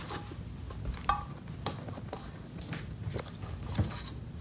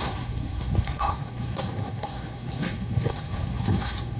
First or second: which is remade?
second